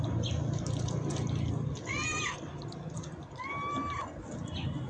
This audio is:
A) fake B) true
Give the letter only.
B